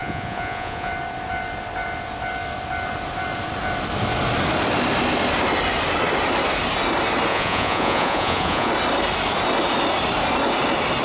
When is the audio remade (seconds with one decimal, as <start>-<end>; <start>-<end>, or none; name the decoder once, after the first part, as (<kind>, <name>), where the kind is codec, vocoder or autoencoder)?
0.0-0.9 (vocoder, Vocos); 7.3-8.7